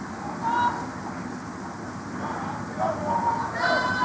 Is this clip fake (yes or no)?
no